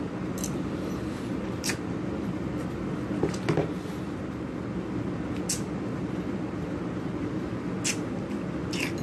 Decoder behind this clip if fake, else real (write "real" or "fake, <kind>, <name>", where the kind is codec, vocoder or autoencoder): real